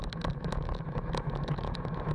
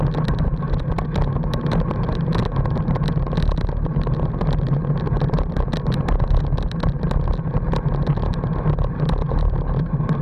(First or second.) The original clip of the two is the second